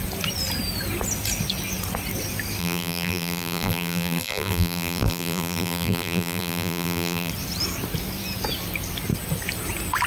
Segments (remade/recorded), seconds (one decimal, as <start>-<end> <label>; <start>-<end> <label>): 0.0-2.6 recorded; 2.6-7.3 remade; 7.3-10.1 recorded